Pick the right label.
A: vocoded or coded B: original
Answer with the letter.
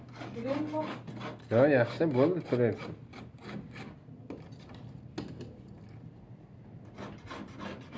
B